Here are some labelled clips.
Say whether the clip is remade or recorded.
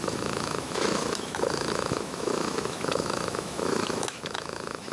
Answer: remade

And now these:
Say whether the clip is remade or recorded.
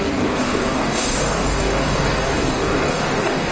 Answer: remade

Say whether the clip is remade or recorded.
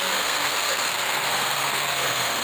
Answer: remade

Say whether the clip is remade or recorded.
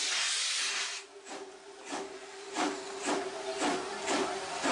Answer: recorded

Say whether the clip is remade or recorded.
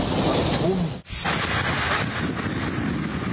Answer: recorded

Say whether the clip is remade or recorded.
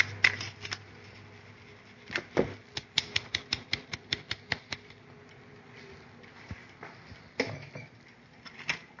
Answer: recorded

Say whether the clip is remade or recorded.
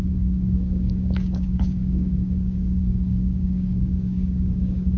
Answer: remade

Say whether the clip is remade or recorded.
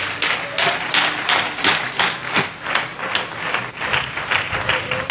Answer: recorded